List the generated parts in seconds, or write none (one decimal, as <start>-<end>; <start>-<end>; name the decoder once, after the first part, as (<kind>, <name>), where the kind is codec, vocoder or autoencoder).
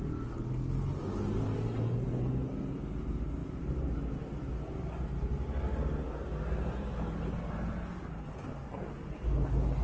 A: none